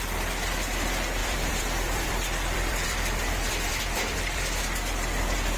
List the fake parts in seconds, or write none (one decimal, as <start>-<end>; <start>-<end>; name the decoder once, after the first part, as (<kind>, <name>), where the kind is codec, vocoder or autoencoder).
1.2-4.6 (vocoder, BigVGAN v2)